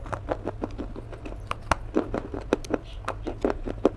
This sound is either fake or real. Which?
real